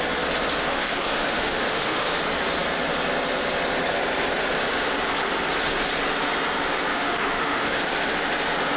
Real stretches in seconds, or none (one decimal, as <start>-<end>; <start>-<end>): 0.0-0.7; 2.2-6.9; 7.8-8.8